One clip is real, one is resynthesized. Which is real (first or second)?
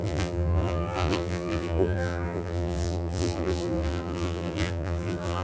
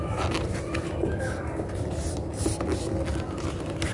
second